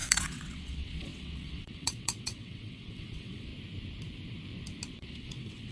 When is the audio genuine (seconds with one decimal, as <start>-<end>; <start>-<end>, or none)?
3.5-4.9